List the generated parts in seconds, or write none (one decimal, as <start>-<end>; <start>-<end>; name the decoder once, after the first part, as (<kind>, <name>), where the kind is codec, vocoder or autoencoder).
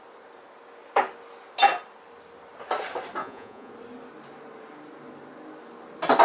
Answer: 3.2-3.7 (vocoder, Vocos)